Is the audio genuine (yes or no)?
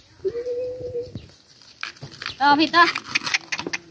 yes